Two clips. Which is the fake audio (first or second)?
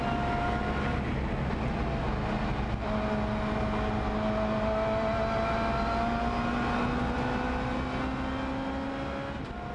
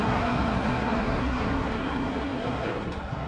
second